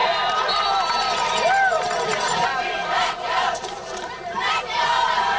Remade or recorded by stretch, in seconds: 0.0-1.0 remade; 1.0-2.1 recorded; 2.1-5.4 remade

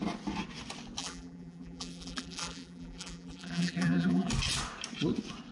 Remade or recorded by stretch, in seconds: 0.0-1.0 recorded; 1.0-4.3 remade; 4.3-5.5 recorded